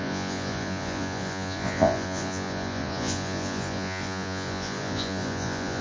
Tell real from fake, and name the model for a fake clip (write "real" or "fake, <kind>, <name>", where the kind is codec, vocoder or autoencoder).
fake, vocoder, Vocos